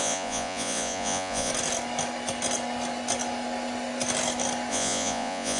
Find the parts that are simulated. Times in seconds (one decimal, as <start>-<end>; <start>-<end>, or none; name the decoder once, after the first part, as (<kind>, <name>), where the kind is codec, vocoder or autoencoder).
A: 0.0-1.5 (vocoder, Vocos); 4.7-5.6